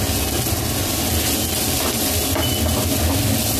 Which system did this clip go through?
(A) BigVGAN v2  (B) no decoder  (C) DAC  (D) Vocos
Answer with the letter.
B